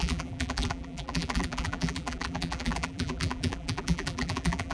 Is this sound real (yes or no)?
no